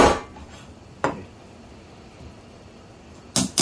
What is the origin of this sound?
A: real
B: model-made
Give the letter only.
A